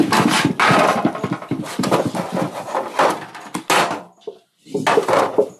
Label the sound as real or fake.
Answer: real